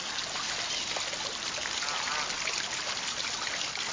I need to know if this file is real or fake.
real